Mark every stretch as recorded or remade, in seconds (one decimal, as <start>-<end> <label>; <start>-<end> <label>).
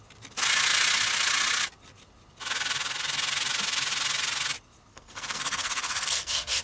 0.0-4.9 recorded; 4.9-6.6 remade